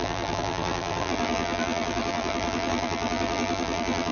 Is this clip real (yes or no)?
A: no